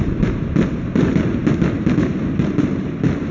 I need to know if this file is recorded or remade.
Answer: recorded